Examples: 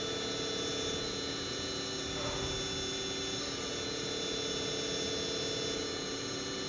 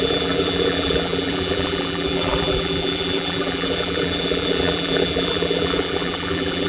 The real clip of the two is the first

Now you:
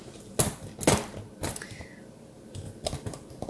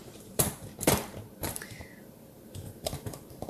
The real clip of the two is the first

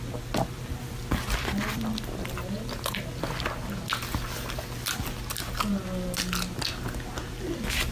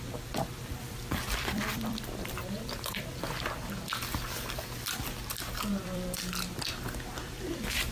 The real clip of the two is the first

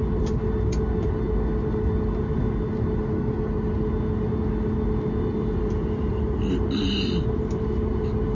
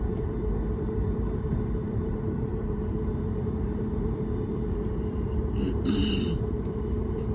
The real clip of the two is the first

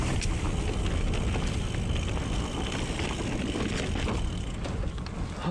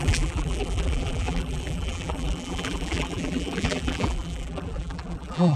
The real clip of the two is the first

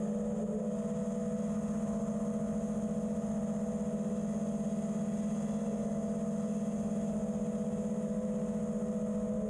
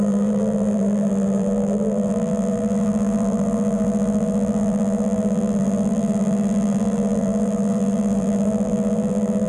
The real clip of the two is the first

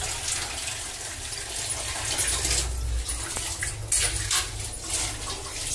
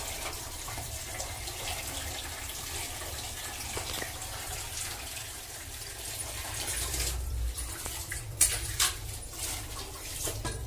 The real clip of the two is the first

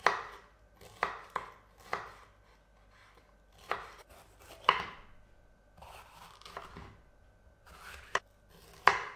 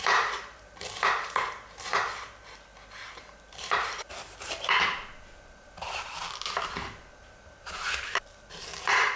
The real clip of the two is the first